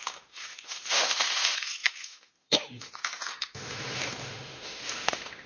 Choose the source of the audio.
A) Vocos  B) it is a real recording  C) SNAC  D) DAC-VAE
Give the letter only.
D